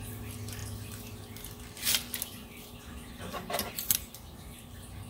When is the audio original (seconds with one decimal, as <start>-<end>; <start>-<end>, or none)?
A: 0.0-5.1